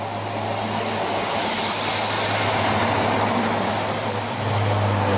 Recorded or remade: recorded